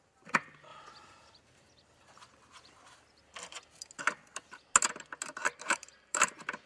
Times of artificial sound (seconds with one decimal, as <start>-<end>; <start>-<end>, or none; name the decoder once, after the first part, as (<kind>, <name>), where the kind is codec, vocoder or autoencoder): 5.4-6.2 (vocoder, BigVGAN v2)